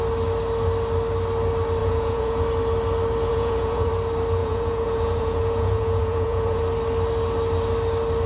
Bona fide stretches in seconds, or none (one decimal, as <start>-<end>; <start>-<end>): 0.0-1.8; 2.4-3.3; 3.9-4.4; 6.6-8.3